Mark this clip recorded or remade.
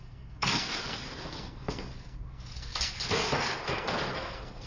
remade